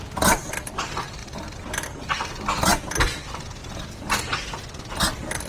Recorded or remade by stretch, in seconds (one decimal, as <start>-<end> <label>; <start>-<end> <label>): 0.0-5.5 remade